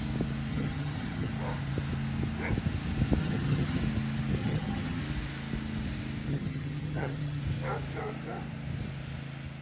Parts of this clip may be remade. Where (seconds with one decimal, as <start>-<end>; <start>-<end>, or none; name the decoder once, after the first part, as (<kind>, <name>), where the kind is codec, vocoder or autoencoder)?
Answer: 0.5-1.3 (vocoder, HiFi-GAN); 3.2-3.8; 4.4-5.0; 6.3-7.4